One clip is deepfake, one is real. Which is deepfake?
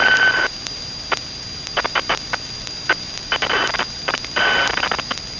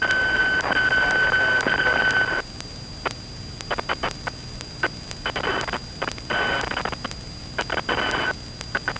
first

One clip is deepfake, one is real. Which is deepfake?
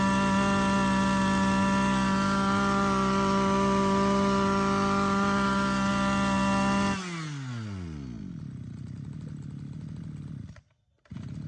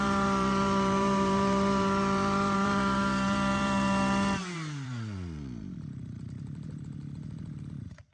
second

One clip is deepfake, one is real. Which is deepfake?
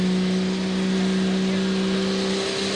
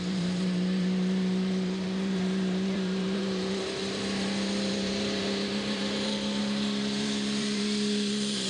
second